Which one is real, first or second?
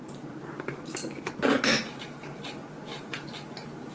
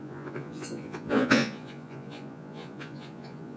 first